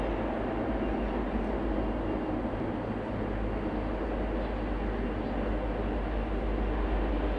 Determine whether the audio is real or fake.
real